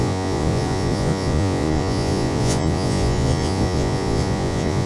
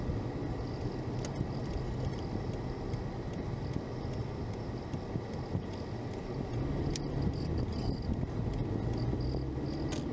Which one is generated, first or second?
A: first